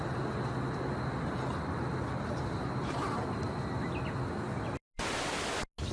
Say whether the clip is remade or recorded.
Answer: recorded